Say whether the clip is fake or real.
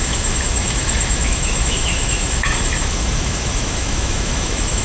fake